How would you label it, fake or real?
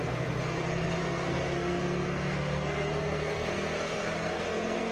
fake